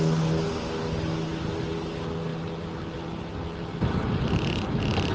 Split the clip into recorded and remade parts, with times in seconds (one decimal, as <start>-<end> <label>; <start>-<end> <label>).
0.0-5.1 recorded